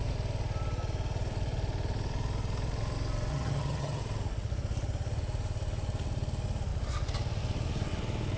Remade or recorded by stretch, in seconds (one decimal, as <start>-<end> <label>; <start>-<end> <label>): 0.0-3.3 recorded; 3.3-4.0 remade; 4.0-8.4 recorded